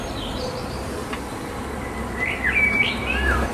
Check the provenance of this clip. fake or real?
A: fake